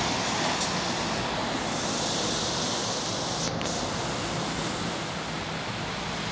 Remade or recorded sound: recorded